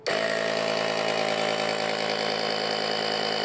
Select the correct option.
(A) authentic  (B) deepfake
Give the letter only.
A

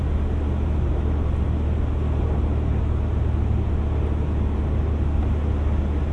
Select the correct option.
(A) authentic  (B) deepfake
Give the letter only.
A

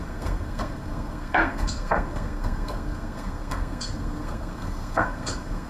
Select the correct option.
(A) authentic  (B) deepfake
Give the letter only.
B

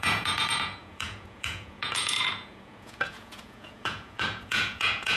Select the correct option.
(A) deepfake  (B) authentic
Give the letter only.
A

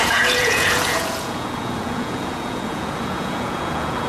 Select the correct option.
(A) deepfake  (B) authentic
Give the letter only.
A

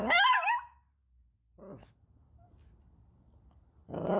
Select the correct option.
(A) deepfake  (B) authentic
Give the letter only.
B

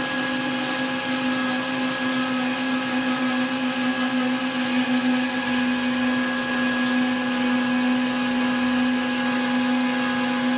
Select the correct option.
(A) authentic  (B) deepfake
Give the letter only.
A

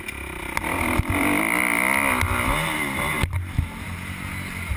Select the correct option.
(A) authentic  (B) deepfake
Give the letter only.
A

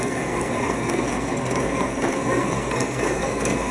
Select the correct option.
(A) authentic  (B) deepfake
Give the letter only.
B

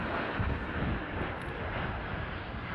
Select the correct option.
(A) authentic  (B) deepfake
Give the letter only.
A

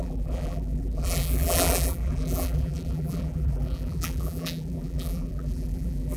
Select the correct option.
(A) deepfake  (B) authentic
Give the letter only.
A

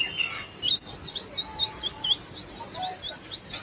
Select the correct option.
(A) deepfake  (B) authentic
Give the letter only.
B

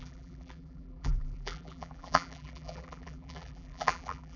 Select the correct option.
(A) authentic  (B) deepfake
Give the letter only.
B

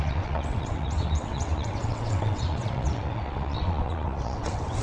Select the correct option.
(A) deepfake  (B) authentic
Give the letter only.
A